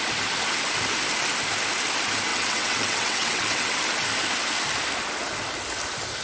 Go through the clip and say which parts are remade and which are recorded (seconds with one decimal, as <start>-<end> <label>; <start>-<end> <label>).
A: 0.0-2.3 recorded; 2.3-3.8 remade; 3.8-6.2 recorded